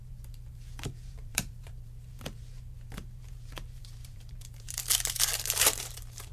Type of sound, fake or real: fake